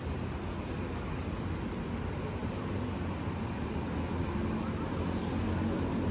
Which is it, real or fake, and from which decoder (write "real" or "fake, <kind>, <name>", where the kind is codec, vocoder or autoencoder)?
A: real